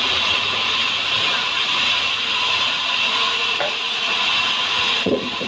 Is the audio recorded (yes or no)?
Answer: no